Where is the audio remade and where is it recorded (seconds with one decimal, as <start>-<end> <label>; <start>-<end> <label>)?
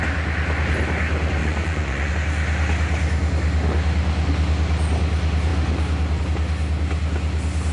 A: 0.0-1.4 recorded; 1.4-2.1 remade; 2.1-7.7 recorded